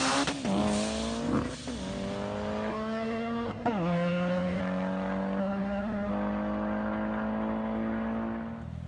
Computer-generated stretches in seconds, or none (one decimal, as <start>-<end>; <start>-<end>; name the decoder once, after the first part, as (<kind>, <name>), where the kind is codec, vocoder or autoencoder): 2.7-4.6 (codec, SNAC); 5.4-6.1